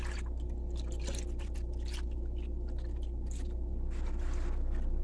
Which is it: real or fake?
real